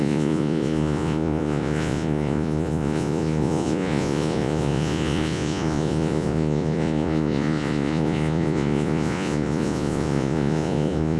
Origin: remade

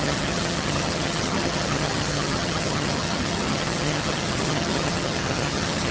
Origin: remade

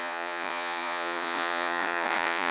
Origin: remade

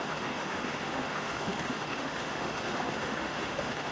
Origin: remade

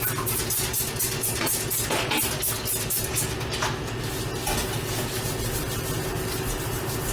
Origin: recorded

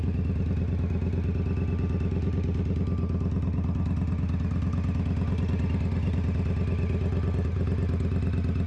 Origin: recorded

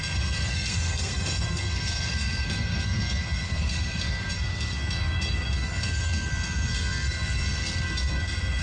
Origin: remade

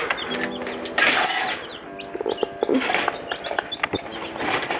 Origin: recorded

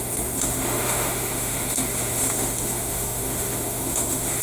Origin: remade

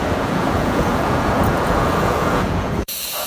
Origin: remade